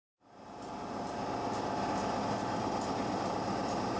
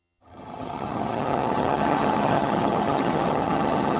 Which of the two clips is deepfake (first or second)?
second